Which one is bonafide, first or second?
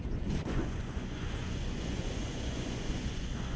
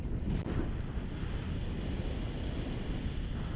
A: second